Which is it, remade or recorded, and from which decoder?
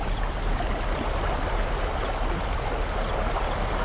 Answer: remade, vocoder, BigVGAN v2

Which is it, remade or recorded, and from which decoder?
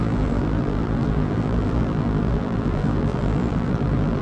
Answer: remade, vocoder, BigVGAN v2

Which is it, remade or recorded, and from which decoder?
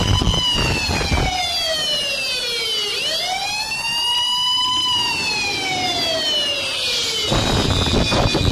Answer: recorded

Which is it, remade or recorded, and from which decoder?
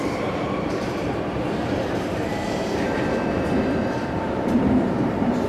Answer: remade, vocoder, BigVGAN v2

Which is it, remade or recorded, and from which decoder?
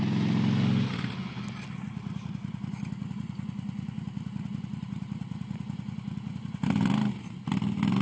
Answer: recorded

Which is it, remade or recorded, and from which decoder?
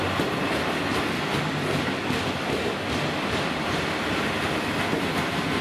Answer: recorded